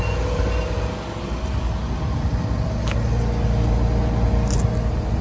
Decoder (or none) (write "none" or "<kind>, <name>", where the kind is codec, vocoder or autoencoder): none